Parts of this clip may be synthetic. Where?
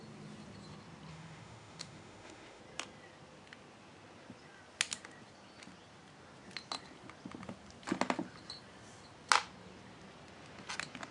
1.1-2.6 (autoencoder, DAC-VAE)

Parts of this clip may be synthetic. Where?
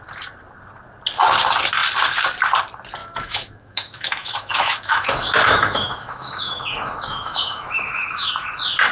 3.0-8.3 (autoencoder, DAC-VAE)